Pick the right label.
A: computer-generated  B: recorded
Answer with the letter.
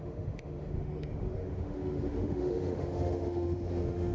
A